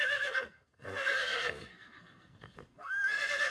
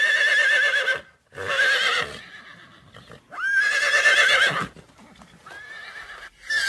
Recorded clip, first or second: second